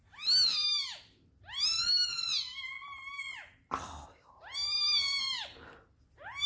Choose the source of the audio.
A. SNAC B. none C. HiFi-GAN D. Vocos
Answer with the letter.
B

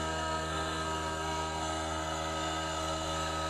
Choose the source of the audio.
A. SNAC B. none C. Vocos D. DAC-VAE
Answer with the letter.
A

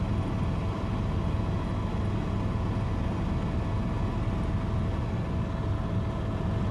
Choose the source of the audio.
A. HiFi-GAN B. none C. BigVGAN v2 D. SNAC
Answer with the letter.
B